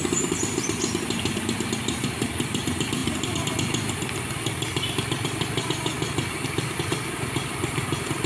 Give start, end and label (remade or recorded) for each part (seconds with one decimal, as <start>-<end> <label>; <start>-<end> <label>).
0.0-8.3 recorded